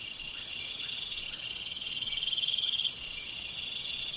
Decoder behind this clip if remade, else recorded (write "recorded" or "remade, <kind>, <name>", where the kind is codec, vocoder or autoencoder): remade, vocoder, Vocos